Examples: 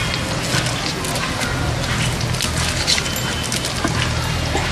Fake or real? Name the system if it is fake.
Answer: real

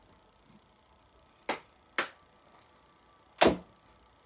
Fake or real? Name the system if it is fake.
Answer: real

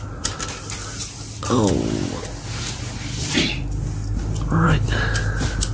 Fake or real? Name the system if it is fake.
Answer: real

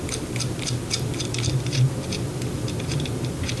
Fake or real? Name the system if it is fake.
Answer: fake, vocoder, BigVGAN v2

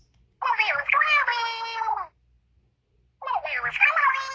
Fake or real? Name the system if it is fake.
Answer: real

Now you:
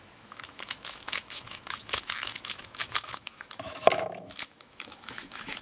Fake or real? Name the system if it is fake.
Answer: fake, autoencoder, DAC-VAE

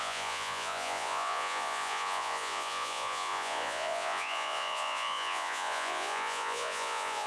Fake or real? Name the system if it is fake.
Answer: fake, vocoder, Vocos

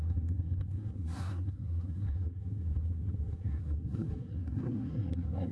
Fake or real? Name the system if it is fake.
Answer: fake, codec, SNAC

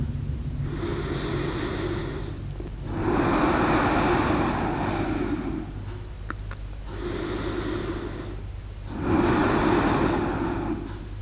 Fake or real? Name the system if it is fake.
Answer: real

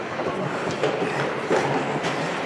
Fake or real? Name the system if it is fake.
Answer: real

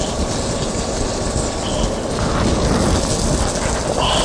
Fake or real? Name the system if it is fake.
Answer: real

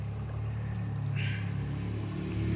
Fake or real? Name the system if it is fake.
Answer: real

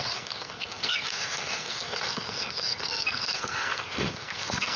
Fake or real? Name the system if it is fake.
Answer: fake, codec, SNAC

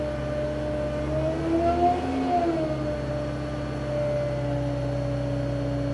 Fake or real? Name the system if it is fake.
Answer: real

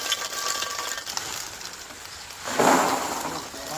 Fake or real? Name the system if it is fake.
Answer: real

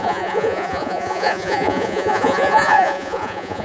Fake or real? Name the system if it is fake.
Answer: fake, vocoder, Vocos